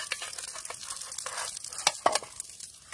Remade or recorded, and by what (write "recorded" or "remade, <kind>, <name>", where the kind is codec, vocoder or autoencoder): recorded